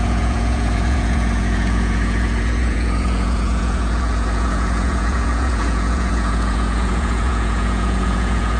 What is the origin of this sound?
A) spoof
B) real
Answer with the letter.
A